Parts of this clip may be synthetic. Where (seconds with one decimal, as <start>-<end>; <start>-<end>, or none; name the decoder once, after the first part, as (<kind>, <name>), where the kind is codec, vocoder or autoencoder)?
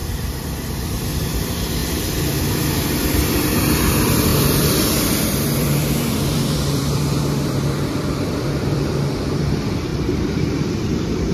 0.0-11.3 (vocoder, BigVGAN v2)